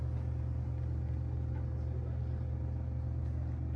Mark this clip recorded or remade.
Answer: recorded